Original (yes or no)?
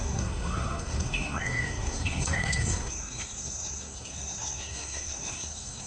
no